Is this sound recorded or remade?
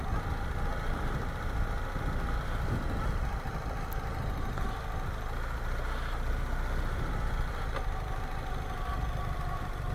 recorded